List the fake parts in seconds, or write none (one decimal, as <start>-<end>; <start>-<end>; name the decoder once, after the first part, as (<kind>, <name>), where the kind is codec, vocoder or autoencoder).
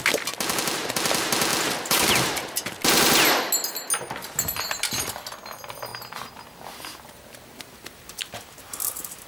5.9-7.9 (vocoder, BigVGAN v2)